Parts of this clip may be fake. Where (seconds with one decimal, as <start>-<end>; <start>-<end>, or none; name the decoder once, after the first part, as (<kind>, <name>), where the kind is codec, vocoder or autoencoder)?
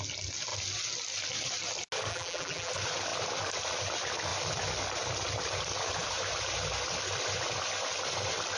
2.1-2.7 (vocoder, BigVGAN v2)